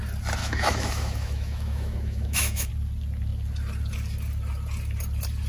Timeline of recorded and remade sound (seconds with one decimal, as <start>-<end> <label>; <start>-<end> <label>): 0.0-0.4 recorded; 0.4-2.7 remade; 2.7-5.5 recorded